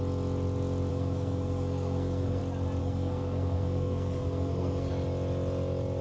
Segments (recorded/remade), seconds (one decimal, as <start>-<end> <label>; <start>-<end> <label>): 0.0-0.9 recorded; 0.9-2.4 remade; 2.4-2.8 recorded; 2.8-4.9 remade; 4.9-6.0 recorded